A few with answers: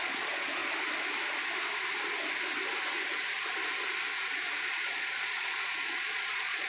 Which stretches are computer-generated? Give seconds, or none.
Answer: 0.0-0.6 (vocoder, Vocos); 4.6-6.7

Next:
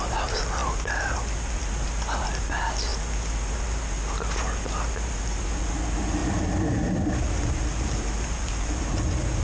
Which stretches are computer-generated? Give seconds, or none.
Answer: 0.6-1.6 (vocoder, BigVGAN v2); 6.2-9.4

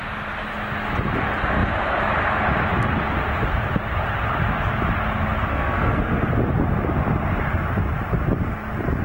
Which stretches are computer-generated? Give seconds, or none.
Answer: 5.5-6.3 (codec, SNAC)

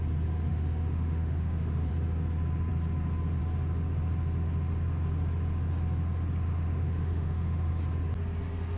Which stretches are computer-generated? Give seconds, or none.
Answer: 0.5-1.9 (autoencoder, DAC-VAE); 6.5-7.7

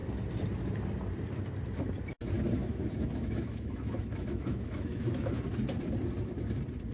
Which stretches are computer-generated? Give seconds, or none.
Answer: 2.6-5.4 (autoencoder, DAC-VAE)

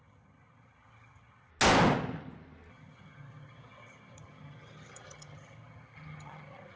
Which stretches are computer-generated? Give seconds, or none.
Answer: 0.0-1.5 (vocoder, HiFi-GAN); 2.7-6.8

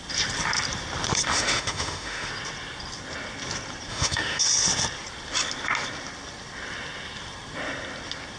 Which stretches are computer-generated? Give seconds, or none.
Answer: 1.3-2.3 (autoencoder, DAC-VAE); 3.9-4.4

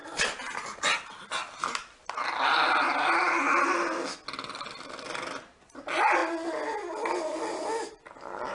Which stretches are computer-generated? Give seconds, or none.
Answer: 0.0-0.6 (vocoder, BigVGAN v2)